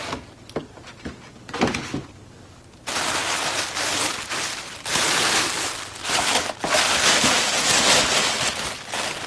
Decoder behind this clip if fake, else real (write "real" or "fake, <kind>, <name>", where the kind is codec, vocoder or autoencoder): real